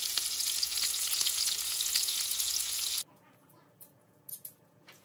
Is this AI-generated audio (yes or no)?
yes